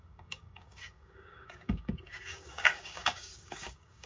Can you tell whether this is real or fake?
fake